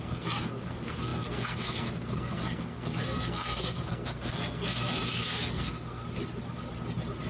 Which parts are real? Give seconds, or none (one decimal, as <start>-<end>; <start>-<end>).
6.0-7.3